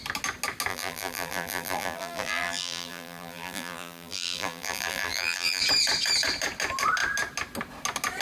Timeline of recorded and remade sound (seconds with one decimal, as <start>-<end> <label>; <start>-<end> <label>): 0.0-0.7 recorded; 0.7-5.6 remade; 5.6-8.2 recorded